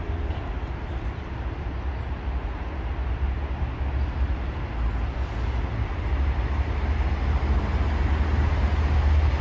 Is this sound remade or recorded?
recorded